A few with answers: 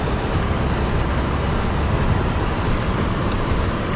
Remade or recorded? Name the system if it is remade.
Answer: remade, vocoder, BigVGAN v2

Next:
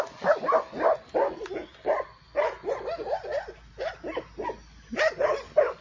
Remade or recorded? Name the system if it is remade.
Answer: recorded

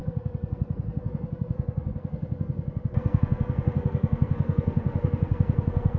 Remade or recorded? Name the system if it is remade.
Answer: remade, codec, SNAC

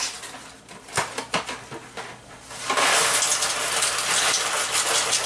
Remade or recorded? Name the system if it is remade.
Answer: recorded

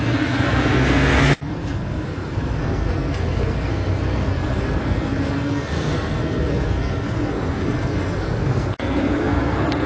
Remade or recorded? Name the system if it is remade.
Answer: remade, codec, SNAC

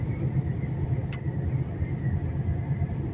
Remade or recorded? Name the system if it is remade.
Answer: recorded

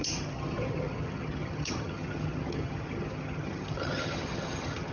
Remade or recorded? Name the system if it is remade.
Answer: remade, vocoder, HiFi-GAN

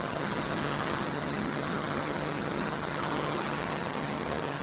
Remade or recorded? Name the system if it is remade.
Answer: remade, vocoder, HiFi-GAN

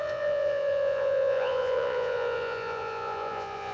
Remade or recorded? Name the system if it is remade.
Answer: remade, vocoder, Vocos